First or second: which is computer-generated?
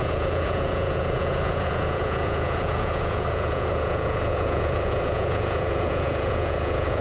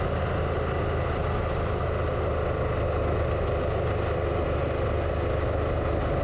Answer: first